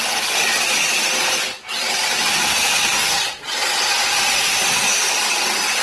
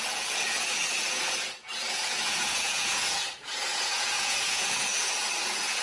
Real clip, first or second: first